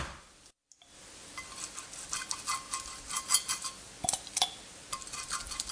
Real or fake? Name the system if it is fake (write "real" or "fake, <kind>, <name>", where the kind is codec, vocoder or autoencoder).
real